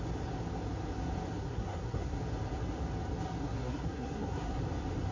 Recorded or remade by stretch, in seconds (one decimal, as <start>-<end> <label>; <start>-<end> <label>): 0.0-1.4 recorded; 1.4-2.2 remade; 2.2-3.4 recorded; 3.4-4.6 remade; 4.6-5.1 recorded